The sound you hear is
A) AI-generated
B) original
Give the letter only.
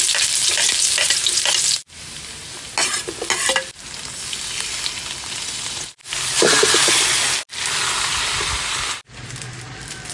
B